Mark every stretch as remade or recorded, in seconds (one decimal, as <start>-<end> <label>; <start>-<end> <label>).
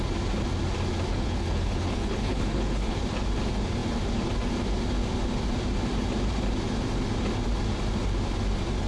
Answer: 0.0-1.1 recorded; 1.1-3.0 remade; 3.0-8.9 recorded